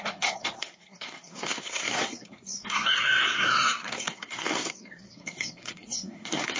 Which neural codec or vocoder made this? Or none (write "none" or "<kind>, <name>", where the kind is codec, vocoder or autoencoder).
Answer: codec, SNAC